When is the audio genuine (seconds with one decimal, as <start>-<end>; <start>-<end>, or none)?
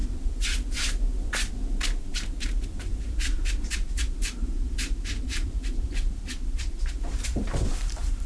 0.0-2.0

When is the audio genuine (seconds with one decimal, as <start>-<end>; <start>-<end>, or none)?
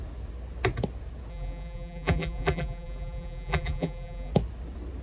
0.0-1.3; 4.3-5.0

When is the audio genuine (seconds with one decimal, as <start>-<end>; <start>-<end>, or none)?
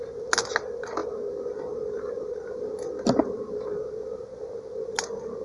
0.0-5.4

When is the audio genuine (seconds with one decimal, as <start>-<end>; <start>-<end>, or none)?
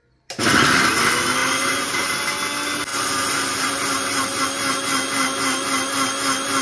0.0-1.4; 2.0-2.9; 4.4-6.6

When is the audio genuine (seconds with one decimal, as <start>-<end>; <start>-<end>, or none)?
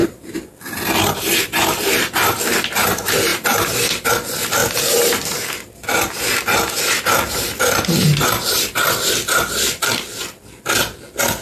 2.4-3.3; 4.1-11.4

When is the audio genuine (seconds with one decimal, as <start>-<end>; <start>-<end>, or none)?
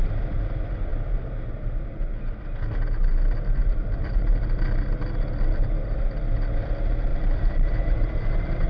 0.0-3.6; 4.3-7.1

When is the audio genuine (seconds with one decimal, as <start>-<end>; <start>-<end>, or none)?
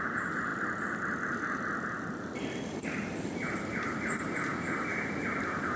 0.0-0.5; 4.0-5.8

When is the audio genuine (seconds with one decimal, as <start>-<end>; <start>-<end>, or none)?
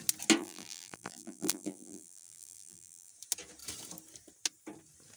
0.0-0.4; 3.1-5.2